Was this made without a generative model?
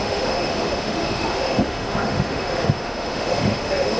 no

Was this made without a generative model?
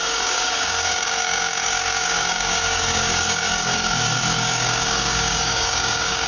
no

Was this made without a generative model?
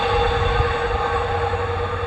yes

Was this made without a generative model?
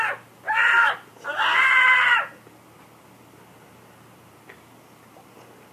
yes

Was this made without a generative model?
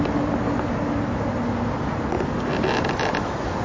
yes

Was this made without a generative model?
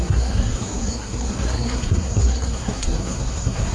no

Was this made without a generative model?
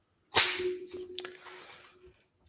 yes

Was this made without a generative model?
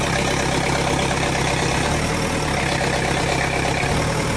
yes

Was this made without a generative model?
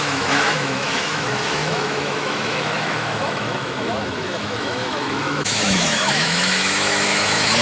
no